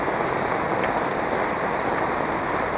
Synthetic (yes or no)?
no